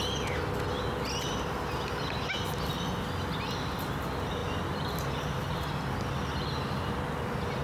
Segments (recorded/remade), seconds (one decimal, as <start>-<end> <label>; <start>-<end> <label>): 0.0-7.6 recorded